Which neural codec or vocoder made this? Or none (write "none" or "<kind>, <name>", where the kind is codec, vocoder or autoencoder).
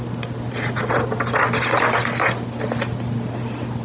none